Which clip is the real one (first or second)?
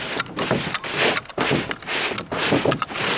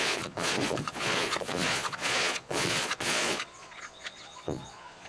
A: first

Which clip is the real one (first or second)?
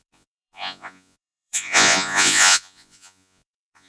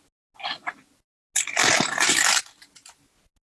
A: second